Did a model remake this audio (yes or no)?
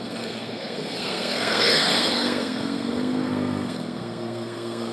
yes